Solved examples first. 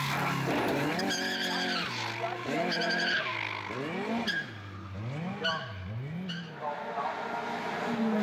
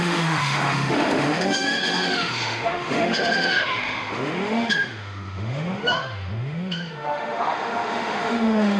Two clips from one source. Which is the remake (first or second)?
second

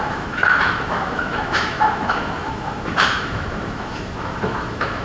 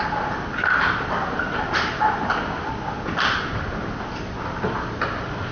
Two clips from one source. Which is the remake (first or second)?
first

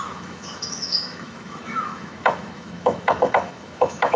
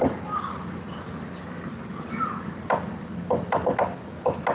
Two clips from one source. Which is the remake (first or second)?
first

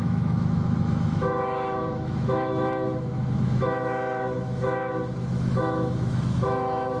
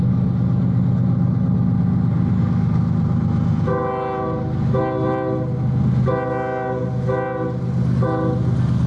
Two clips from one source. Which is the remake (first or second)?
first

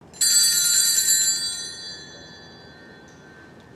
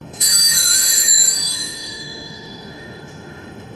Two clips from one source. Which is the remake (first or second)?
second